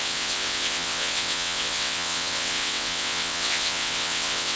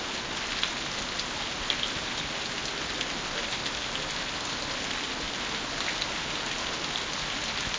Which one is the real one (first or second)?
second